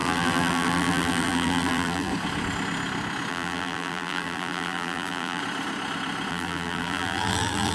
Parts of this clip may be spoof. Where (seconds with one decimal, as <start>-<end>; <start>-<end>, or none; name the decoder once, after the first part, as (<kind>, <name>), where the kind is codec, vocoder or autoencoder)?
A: 0.0-2.1 (vocoder, BigVGAN v2); 3.3-5.4; 6.3-7.7